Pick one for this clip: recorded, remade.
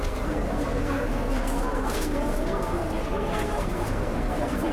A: remade